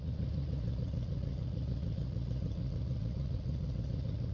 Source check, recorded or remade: remade